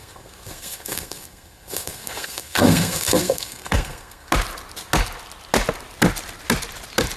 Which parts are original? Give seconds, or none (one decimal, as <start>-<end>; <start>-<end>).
4.3-7.2